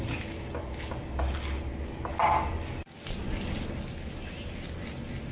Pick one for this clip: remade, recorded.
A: recorded